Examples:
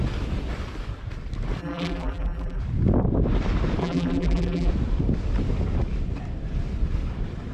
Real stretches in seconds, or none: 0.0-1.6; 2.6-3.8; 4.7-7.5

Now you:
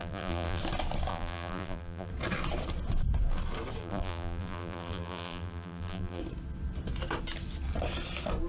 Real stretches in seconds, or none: 0.6-1.1; 2.1-3.8; 6.2-8.5

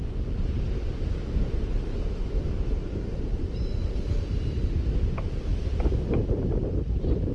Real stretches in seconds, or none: 5.5-6.2